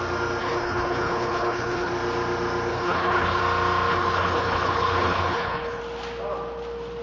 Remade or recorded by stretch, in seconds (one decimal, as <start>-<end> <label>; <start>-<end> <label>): 0.0-0.4 recorded; 0.4-1.9 remade; 1.9-2.7 recorded; 2.7-3.4 remade; 3.4-3.9 recorded; 3.9-5.8 remade; 5.8-7.0 recorded